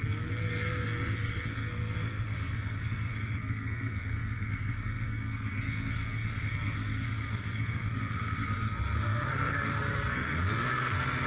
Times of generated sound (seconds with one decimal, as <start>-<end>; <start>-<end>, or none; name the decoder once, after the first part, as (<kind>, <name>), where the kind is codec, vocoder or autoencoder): 0.0-11.3 (codec, SNAC)

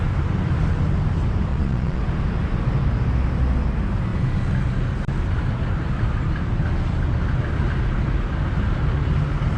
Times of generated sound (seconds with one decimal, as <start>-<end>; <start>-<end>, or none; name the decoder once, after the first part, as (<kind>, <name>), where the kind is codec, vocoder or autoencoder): 1.5-2.0 (vocoder, Vocos)

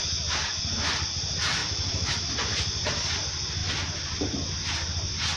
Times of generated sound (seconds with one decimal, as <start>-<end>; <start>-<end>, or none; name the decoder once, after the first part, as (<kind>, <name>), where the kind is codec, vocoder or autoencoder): 1.6-2.3 (autoencoder, DAC-VAE)

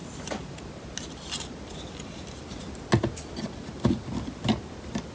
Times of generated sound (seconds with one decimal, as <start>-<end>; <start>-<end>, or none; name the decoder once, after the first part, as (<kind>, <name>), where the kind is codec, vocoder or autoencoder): none

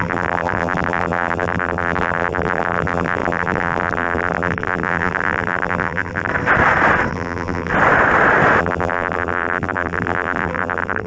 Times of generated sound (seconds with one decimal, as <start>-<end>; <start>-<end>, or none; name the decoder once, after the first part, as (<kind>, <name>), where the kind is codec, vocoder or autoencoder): 0.0-6.3 (vocoder, BigVGAN v2); 7.1-7.7; 8.6-11.1

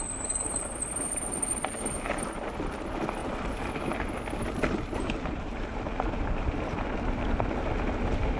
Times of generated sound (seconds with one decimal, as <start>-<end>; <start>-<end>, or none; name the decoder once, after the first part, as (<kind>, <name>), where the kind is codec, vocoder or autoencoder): 3.2-3.7 (vocoder, BigVGAN v2)